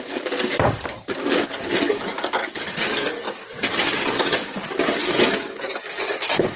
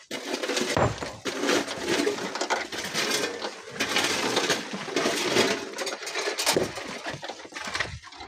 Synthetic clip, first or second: first